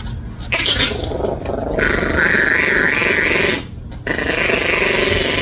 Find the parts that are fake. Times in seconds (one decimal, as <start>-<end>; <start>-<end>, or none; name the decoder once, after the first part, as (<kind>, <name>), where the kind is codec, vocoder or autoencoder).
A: none